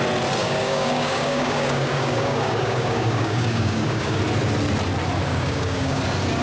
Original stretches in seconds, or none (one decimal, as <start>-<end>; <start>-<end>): 0.0-0.4; 4.2-5.3; 6.0-6.4